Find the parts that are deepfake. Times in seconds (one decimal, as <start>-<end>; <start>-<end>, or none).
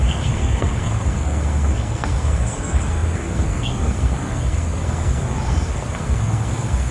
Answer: 0.0-6.9